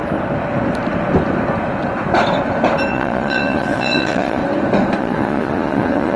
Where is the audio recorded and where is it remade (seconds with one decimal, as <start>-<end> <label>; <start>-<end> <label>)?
0.0-2.9 recorded; 2.9-4.4 remade; 4.4-5.0 recorded; 5.0-6.2 remade

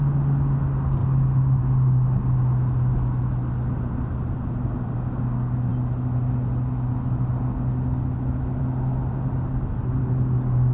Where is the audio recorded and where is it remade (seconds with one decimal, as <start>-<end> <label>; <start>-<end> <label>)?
0.0-10.7 recorded

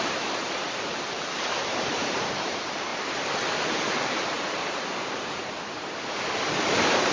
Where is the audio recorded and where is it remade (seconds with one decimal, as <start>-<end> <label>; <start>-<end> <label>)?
0.0-2.9 remade; 2.9-4.5 recorded; 4.5-5.4 remade; 5.4-7.1 recorded